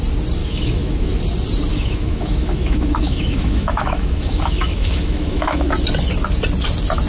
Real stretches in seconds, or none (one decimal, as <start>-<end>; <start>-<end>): 0.0-0.4; 1.2-1.7; 5.7-7.1